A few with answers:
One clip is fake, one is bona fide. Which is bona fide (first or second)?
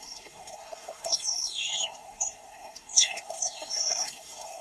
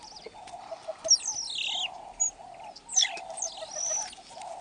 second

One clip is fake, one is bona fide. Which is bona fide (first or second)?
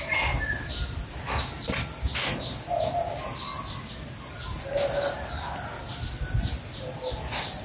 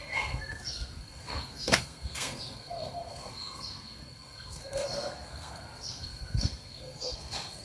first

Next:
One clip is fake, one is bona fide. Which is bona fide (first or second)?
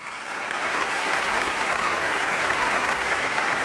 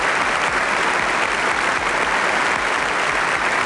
second